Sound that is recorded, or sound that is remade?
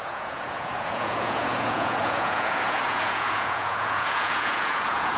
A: remade